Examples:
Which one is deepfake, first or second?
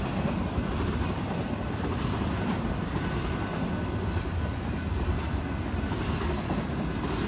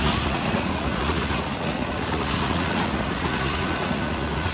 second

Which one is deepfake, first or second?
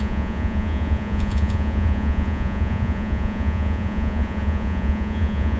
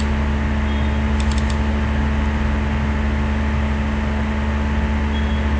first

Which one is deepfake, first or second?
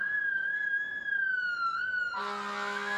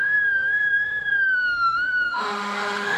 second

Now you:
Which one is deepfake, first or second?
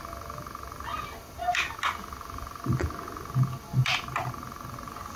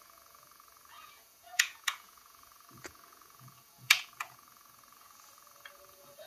second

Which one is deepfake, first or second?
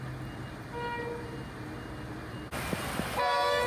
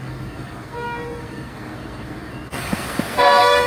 second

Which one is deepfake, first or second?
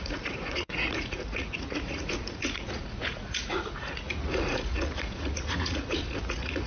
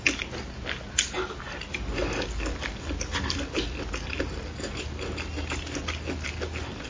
first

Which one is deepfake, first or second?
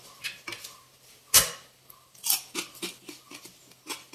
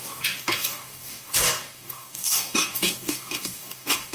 second